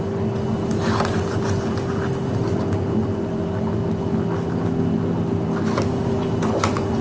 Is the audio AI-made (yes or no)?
no